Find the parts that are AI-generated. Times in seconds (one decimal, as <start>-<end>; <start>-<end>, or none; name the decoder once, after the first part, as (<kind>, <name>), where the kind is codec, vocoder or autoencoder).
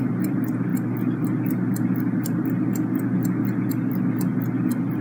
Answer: none